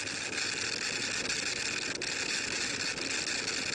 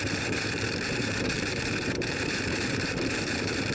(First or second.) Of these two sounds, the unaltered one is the first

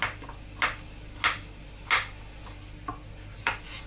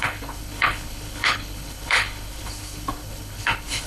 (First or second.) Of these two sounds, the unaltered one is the first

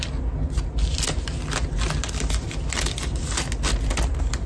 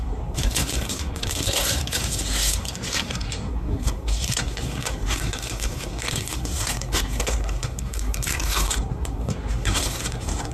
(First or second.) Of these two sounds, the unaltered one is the first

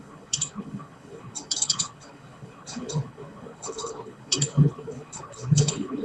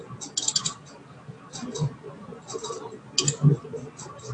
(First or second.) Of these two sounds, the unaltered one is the second